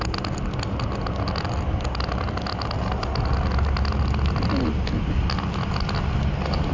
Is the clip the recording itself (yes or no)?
yes